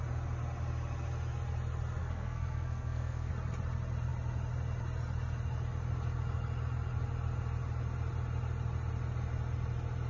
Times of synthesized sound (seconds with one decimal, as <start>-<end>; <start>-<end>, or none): 2.0-3.3